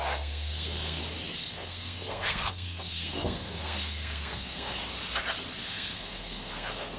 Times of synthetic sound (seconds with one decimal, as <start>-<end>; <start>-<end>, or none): 0.0-1.0; 1.5-4.8; 5.6-7.0

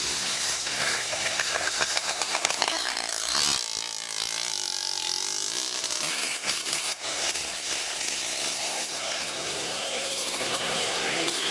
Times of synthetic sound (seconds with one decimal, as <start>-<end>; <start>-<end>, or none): 0.0-3.4; 6.1-11.5

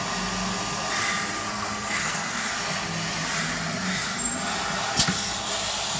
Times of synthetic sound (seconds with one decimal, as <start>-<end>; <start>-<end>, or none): 1.5-2.5

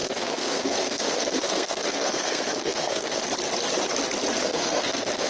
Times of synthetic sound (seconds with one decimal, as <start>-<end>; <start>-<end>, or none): 0.0-3.2; 4.4-5.3

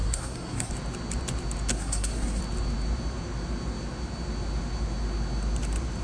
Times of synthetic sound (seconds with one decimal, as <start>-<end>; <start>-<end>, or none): 0.0-0.7; 1.7-2.4

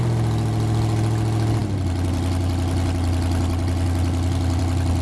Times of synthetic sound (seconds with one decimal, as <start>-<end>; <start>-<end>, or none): none

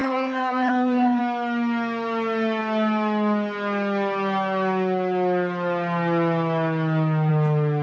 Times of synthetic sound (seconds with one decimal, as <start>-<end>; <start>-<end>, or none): 0.0-1.2

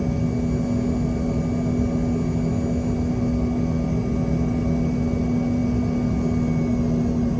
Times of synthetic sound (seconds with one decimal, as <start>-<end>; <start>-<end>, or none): none